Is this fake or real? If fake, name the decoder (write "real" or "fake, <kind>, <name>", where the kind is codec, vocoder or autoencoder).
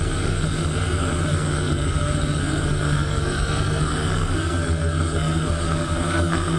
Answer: fake, codec, SNAC